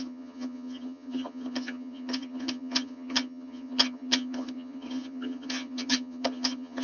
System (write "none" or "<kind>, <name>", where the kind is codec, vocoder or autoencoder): vocoder, HiFi-GAN